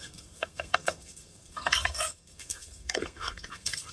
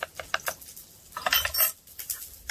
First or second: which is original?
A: second